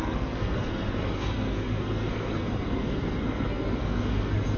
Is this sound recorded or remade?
remade